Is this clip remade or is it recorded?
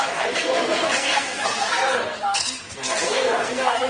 remade